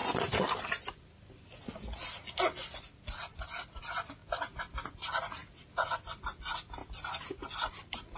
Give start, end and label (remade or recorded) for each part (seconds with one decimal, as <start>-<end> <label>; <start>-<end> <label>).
0.0-8.2 recorded